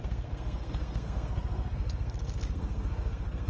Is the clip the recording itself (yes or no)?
no